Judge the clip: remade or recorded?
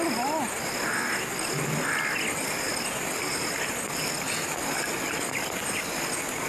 recorded